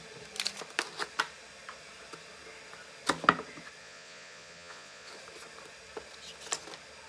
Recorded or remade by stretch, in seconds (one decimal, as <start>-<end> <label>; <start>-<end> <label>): 0.0-3.8 recorded; 3.8-5.1 remade; 5.1-7.1 recorded